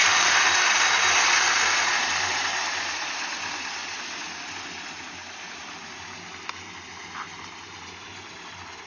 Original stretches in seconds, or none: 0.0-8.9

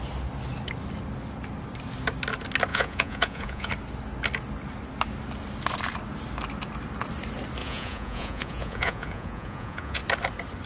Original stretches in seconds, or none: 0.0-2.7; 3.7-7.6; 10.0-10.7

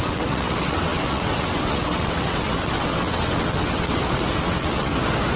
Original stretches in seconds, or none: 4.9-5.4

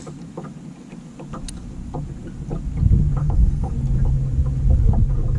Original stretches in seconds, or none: 0.0-3.2; 3.7-5.4